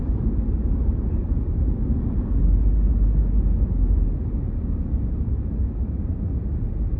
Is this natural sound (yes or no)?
yes